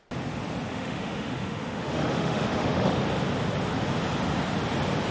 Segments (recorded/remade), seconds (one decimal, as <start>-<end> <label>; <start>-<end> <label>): 0.0-0.7 recorded; 0.7-3.0 remade; 3.0-5.1 recorded